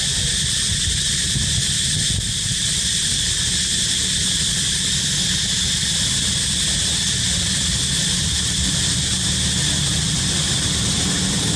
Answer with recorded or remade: recorded